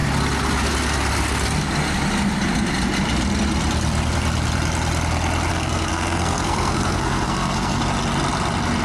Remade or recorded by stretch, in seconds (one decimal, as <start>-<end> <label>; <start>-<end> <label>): 0.0-5.5 recorded; 5.5-7.8 remade; 7.8-8.8 recorded